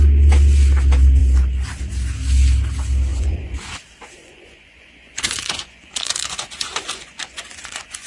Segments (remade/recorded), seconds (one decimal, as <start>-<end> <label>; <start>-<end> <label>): 0.0-3.1 recorded; 3.1-3.7 remade; 3.7-4.2 recorded; 4.2-8.1 remade

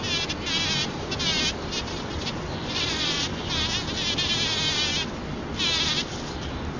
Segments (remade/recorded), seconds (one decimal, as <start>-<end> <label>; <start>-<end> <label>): 0.0-2.5 recorded; 2.5-3.5 remade; 3.5-6.8 recorded

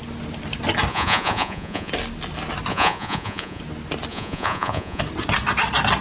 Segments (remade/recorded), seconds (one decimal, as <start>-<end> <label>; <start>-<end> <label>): 0.0-0.9 recorded; 0.9-1.9 remade; 1.9-2.7 recorded; 2.7-3.6 remade; 3.6-4.1 recorded; 4.1-5.0 remade; 5.0-6.0 recorded

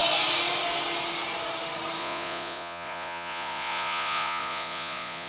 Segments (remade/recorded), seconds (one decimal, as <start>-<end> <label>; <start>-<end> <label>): 0.0-2.0 recorded; 2.0-5.3 remade

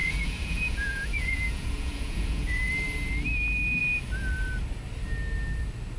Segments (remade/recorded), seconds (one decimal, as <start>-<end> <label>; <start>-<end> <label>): 0.0-2.7 remade; 2.7-6.0 recorded

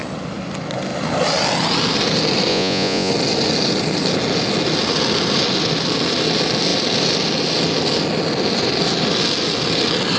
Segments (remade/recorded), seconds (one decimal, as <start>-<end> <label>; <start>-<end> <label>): 0.0-2.5 recorded; 2.5-3.1 remade; 3.1-10.2 recorded

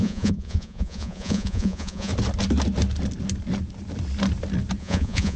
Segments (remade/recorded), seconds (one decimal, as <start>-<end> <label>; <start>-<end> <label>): 0.0-2.1 remade; 2.1-4.8 recorded; 4.8-5.4 remade

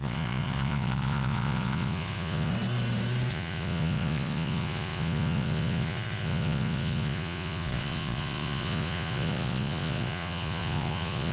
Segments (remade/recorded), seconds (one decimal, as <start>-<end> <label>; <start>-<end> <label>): 0.0-2.5 remade; 2.5-3.3 recorded; 3.3-11.3 remade